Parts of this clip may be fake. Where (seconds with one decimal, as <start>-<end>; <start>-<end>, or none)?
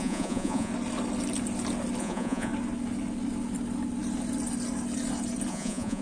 0.0-0.7; 2.0-2.5; 5.5-6.0